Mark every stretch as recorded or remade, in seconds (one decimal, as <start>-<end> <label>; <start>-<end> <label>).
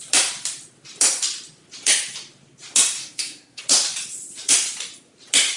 0.0-3.0 recorded; 3.0-3.6 remade; 3.6-5.6 recorded